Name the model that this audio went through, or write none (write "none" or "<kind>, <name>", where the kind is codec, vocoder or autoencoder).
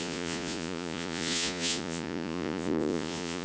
vocoder, Vocos